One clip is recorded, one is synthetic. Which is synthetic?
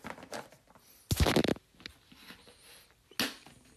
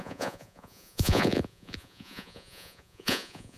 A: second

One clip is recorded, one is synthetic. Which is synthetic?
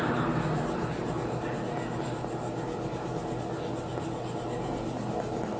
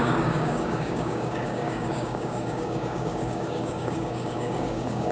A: second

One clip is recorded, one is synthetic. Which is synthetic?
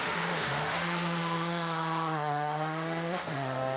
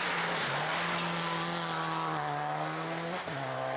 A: first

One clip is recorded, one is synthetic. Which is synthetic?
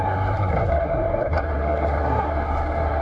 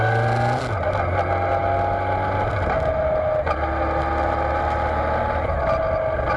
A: first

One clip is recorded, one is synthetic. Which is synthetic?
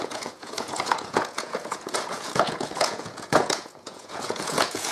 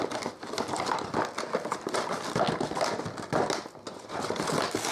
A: first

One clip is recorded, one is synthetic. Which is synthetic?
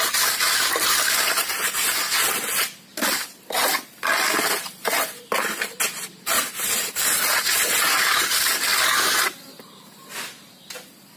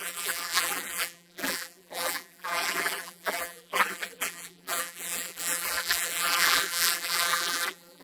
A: second